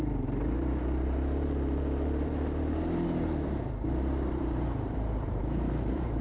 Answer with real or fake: fake